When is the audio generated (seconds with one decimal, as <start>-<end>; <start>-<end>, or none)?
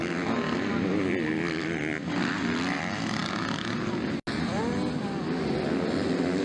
none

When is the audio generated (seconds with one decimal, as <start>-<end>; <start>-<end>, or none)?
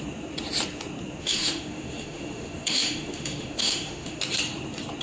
1.2-4.2